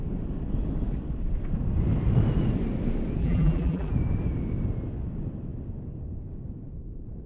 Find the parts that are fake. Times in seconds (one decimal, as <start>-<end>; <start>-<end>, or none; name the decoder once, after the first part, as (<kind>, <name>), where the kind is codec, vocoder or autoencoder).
3.2-3.9 (vocoder, BigVGAN v2)